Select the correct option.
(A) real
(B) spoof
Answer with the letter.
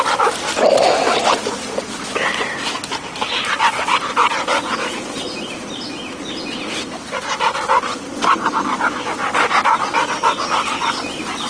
A